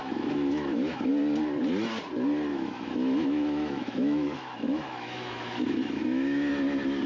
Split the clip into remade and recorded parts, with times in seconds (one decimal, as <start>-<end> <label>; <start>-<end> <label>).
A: 0.0-1.1 remade; 1.1-2.5 recorded; 2.5-6.5 remade; 6.5-7.1 recorded